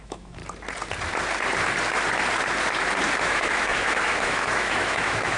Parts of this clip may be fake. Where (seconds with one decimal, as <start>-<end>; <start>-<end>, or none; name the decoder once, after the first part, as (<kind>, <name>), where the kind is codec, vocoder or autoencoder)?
0.0-0.4 (autoencoder, DAC-VAE); 3.2-5.4